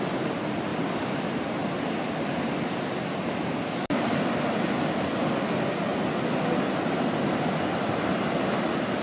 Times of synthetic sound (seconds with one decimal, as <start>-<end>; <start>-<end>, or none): 0.7-1.2; 1.6-4.6